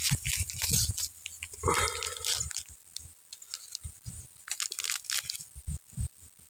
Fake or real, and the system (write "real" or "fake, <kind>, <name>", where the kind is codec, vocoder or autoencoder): real